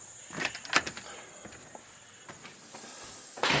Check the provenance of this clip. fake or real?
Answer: real